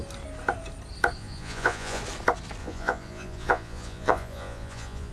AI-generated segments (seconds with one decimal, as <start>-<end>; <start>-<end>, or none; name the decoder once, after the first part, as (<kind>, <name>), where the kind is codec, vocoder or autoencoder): 1.2-2.0 (vocoder, Vocos); 2.6-5.1